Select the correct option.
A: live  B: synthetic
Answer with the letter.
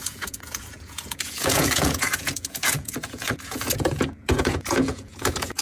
B